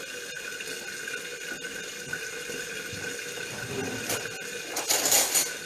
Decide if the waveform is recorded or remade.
recorded